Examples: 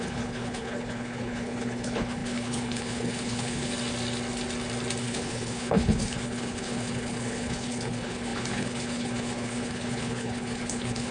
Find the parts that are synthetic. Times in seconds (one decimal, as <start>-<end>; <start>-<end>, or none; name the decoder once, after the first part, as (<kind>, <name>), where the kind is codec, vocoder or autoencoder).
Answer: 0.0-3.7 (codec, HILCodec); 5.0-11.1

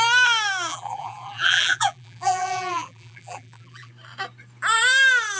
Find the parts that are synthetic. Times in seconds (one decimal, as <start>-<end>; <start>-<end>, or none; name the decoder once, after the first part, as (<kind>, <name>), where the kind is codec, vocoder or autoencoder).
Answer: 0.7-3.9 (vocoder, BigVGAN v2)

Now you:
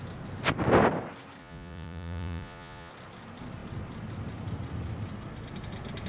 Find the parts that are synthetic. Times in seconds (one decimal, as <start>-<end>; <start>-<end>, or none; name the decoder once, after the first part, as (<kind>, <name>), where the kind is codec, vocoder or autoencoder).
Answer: 1.4-2.9 (vocoder, Vocos)

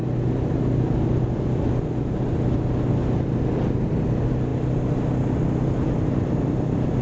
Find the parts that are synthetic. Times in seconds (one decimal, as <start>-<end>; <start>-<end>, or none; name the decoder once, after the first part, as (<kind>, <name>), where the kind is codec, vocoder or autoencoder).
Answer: none